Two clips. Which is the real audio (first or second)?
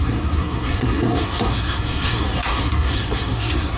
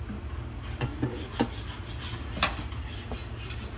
second